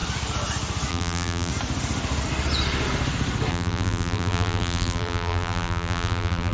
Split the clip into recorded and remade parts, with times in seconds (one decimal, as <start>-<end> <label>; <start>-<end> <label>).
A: 0.0-0.9 recorded; 0.9-1.5 remade; 1.5-3.5 recorded; 3.5-6.5 remade